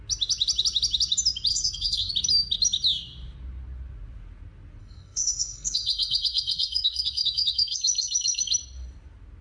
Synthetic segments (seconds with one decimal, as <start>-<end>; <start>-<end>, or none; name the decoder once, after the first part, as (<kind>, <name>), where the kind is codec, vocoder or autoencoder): 1.5-2.1 (codec, SNAC); 4.8-8.4